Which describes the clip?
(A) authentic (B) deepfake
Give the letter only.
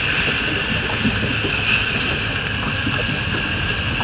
A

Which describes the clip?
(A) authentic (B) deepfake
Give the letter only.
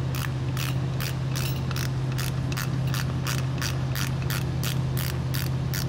A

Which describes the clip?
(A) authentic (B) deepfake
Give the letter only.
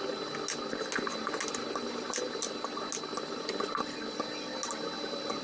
A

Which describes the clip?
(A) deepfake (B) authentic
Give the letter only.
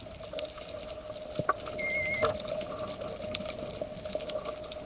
B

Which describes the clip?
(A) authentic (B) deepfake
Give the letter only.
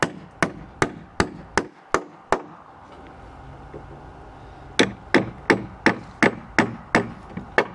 A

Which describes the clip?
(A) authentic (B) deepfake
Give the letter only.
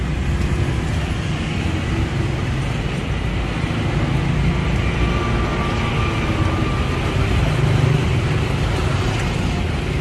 A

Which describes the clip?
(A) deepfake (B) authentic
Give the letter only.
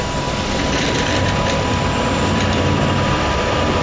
A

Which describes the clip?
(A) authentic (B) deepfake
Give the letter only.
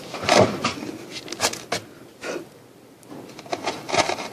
A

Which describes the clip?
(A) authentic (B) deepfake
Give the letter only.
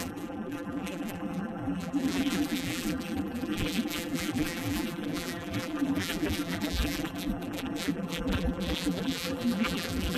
B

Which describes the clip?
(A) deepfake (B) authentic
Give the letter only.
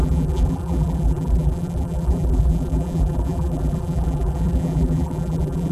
A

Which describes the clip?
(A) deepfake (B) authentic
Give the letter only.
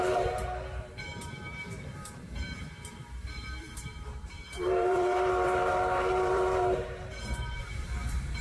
A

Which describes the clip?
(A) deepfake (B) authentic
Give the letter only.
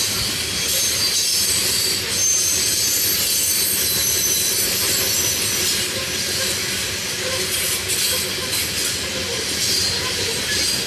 B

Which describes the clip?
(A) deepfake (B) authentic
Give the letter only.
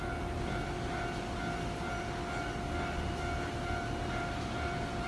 B